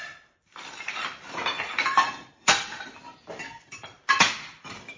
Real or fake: fake